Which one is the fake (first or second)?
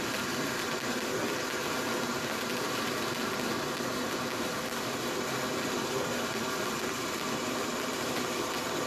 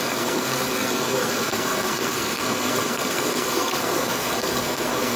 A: second